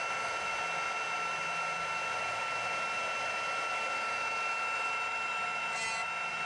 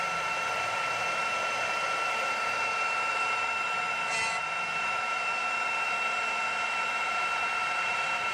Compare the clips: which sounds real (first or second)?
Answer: first